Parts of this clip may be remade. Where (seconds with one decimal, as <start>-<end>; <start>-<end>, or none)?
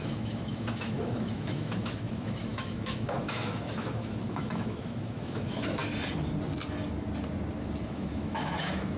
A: 0.0-5.8; 7.8-9.0